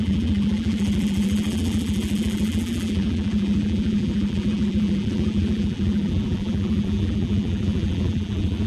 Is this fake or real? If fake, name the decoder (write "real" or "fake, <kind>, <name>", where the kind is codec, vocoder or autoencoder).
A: fake, vocoder, BigVGAN v2